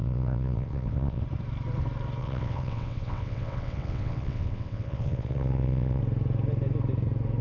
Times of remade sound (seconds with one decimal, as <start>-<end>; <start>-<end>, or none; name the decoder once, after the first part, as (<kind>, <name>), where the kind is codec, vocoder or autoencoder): 0.0-1.2 (vocoder, WaveNeXt); 2.2-6.0